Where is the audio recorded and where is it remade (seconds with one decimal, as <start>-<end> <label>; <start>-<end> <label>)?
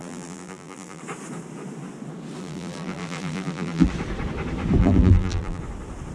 0.0-1.0 remade; 1.0-2.4 recorded; 2.4-3.9 remade; 3.9-4.8 recorded; 4.8-5.6 remade; 5.6-6.1 recorded